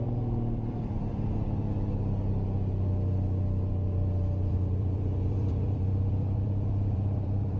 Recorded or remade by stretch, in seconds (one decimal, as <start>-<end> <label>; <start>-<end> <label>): 0.0-1.1 remade; 1.1-3.7 recorded; 3.7-7.6 remade